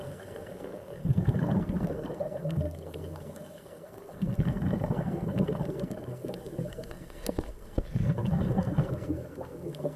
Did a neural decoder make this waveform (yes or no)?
yes